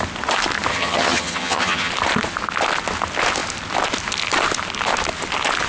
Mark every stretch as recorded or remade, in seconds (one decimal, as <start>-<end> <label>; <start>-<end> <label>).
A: 0.0-0.7 recorded; 0.7-1.9 remade; 1.9-5.7 recorded